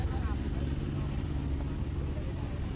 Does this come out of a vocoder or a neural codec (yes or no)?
no